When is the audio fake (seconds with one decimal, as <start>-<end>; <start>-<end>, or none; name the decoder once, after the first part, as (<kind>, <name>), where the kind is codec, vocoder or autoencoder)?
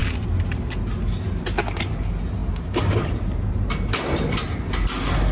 none